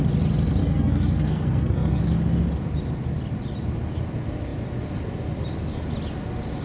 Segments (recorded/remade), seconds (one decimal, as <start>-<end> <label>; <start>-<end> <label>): 0.0-0.6 recorded; 0.6-2.0 remade; 2.0-6.6 recorded